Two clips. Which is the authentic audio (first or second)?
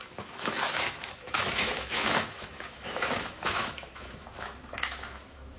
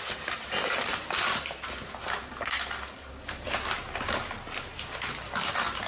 second